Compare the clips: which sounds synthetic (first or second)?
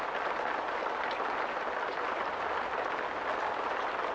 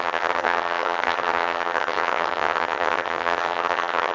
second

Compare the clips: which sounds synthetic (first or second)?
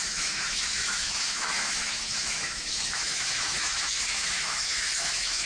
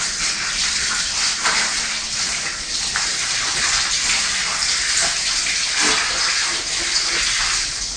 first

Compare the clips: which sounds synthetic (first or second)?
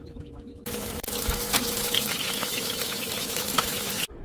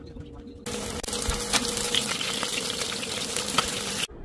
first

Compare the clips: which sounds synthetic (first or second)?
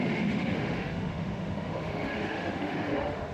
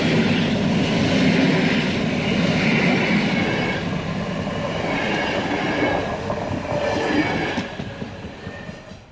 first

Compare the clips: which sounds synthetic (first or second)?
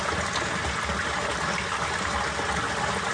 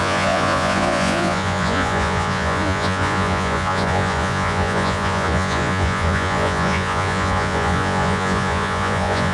second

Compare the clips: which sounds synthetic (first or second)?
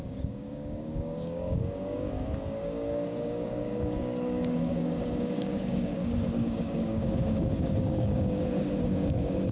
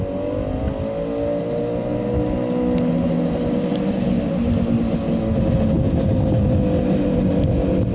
first